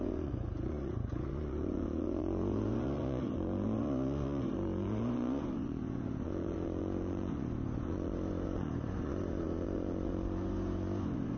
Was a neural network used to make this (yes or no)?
yes